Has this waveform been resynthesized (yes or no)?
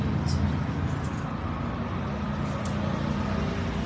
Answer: no